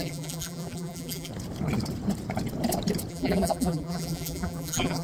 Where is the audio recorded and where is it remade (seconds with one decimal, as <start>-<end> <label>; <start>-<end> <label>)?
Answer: 0.0-1.3 remade; 1.3-3.1 recorded; 3.1-5.0 remade